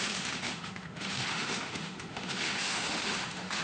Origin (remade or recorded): remade